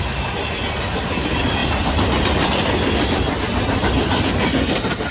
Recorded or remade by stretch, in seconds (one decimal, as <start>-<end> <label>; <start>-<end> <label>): 0.0-5.1 recorded